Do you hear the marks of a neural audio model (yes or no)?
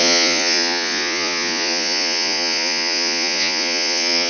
yes